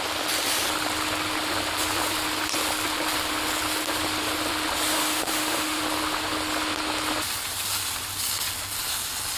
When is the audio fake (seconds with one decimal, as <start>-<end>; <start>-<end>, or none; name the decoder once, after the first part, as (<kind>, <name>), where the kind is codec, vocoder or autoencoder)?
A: 4.9-5.8 (autoencoder, DAC-VAE)

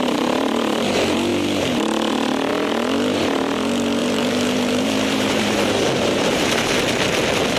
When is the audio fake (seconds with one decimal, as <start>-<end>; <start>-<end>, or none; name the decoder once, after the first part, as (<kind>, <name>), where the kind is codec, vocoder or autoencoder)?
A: 4.0-6.7 (vocoder, BigVGAN v2)